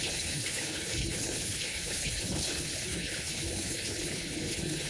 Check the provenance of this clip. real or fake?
fake